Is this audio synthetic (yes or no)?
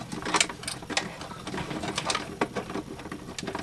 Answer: no